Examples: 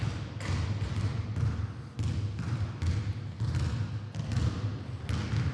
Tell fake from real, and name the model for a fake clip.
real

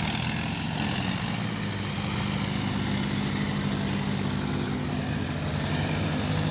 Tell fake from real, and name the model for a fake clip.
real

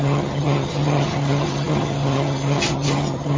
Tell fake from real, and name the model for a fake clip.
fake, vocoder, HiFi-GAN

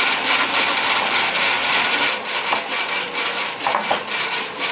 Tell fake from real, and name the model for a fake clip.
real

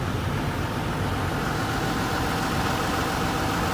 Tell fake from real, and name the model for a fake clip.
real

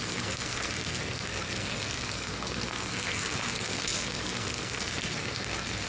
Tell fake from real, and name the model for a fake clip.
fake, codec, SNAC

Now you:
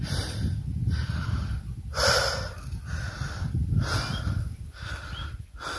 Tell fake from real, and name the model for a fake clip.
real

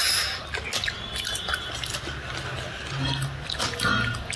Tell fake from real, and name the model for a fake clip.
real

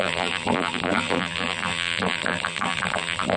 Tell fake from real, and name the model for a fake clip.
fake, vocoder, BigVGAN v2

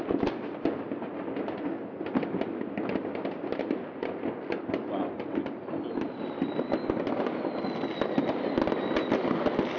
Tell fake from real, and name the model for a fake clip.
real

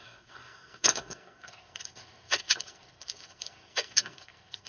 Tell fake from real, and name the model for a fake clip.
fake, codec, SNAC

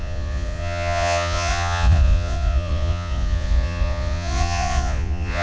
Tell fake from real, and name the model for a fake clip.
fake, vocoder, Vocos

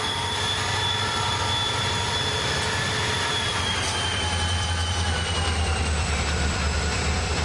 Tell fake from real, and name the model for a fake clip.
fake, vocoder, BigVGAN v2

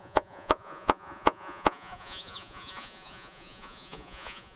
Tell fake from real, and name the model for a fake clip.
fake, vocoder, Vocos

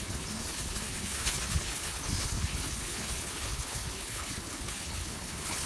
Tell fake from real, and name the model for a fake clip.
fake, codec, HILCodec